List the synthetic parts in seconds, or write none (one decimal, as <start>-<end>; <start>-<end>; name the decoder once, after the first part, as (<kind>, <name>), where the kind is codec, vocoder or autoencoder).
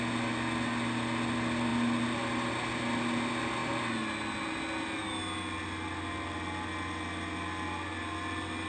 none